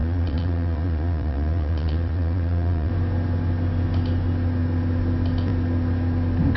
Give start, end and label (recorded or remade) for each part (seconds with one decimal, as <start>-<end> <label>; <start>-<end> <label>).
0.0-2.9 remade; 2.9-6.6 recorded